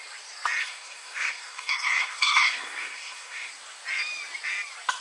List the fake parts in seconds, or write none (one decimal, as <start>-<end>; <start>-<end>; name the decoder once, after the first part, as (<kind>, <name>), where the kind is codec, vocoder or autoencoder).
0.6-3.5 (codec, SNAC)